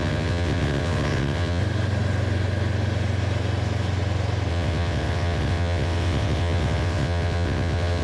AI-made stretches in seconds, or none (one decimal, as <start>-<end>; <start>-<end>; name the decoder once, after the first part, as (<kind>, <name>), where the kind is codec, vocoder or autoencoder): 0.0-1.6 (vocoder, WaveNeXt); 4.5-8.0